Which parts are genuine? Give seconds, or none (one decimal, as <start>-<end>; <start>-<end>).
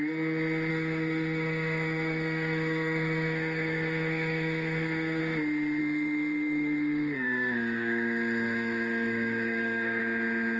0.0-0.7; 5.2-5.8; 10.0-10.6